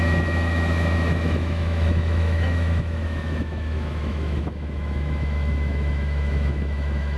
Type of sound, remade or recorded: remade